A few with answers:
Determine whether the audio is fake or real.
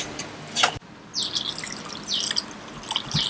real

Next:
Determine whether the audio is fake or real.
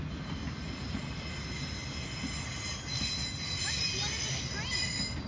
real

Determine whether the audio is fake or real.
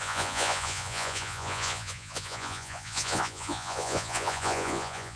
fake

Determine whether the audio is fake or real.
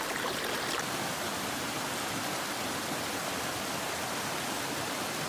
real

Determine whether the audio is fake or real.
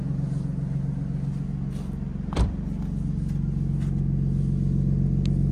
real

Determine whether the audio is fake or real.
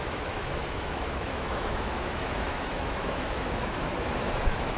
fake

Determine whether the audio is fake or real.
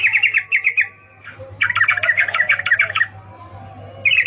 real